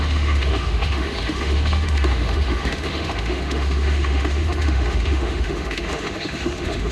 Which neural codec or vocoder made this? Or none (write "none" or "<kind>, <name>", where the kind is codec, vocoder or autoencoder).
autoencoder, DAC-VAE